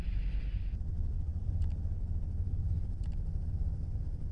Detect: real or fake real